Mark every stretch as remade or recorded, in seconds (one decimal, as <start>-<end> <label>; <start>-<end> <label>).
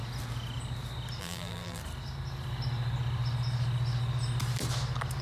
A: 0.0-1.2 recorded; 1.2-1.8 remade; 1.8-5.2 recorded